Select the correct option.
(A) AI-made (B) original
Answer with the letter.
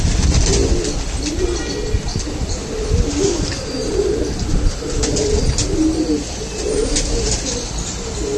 B